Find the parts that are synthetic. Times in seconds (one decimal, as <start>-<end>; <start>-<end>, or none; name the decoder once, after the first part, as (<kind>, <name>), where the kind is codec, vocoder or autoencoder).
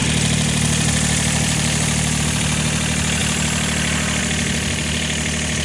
0.0-2.2 (vocoder, BigVGAN v2)